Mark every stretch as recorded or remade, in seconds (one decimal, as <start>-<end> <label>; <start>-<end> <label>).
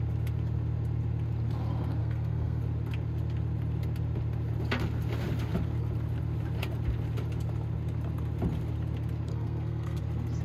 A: 0.0-2.0 recorded; 2.0-2.6 remade; 2.6-9.3 recorded; 9.3-10.0 remade; 10.0-10.4 recorded